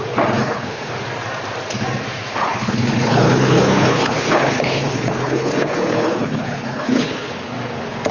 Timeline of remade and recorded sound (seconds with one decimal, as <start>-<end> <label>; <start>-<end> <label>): 0.0-0.4 recorded; 0.4-0.9 remade; 0.9-2.4 recorded; 2.4-7.3 remade; 7.3-8.1 recorded